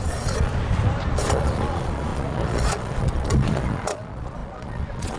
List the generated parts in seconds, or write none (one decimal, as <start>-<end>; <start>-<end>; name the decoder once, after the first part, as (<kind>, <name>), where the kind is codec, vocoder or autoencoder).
0.0-0.5 (vocoder, Vocos); 1.2-5.2